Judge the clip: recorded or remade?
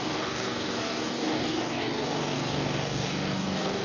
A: remade